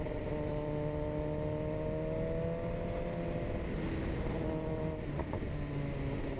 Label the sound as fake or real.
real